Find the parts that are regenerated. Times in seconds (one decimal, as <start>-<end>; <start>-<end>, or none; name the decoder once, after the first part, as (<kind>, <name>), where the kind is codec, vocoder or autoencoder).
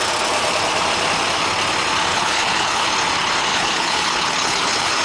2.1-2.9 (codec, HILCodec); 3.5-5.0